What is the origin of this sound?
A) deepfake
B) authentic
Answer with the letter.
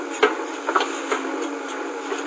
B